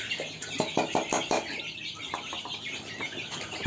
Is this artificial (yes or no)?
no